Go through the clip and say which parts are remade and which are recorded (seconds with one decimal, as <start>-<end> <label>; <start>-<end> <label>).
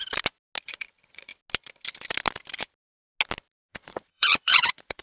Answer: 0.0-0.6 recorded; 0.6-1.3 remade; 1.3-3.7 recorded; 3.7-5.0 remade